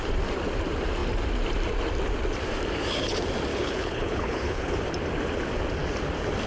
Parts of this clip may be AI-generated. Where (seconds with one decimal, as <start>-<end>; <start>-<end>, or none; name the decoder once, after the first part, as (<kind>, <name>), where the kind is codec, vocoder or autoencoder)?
3.5-4.7 (codec, HILCodec)